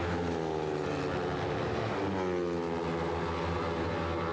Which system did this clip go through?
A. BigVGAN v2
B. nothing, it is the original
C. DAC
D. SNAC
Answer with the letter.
B